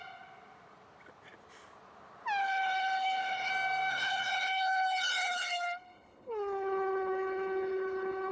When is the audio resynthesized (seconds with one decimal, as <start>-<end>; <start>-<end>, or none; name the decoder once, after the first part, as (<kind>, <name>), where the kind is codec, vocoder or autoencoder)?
2.4-3.5 (codec, HILCodec); 3.9-8.3